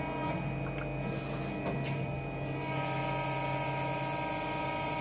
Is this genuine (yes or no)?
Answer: yes